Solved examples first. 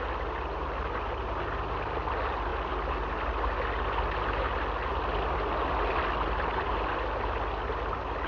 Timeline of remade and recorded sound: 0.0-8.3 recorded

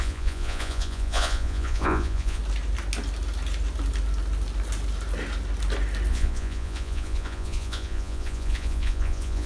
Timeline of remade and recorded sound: 0.0-2.4 remade; 2.4-6.1 recorded; 6.1-9.5 remade

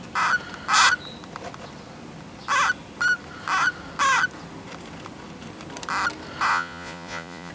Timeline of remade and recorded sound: 0.0-6.5 recorded; 6.5-7.5 remade

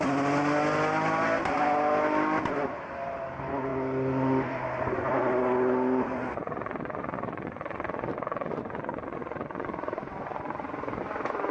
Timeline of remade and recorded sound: 0.0-6.3 recorded; 6.3-11.0 remade; 11.0-11.5 recorded

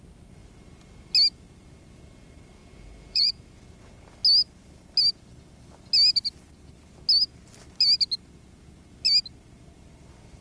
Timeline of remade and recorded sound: 0.0-2.6 recorded; 2.6-3.7 remade; 3.7-10.4 recorded

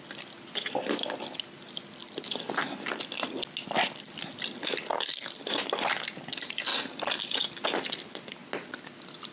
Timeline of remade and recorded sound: 0.0-9.3 recorded

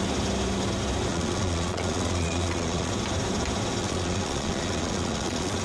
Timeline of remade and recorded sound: 0.0-1.1 recorded; 1.1-2.9 remade; 2.9-3.8 recorded; 3.8-5.6 remade

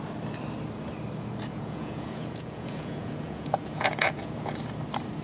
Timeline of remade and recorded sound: 0.0-1.5 recorded; 1.5-4.6 remade; 4.6-5.2 recorded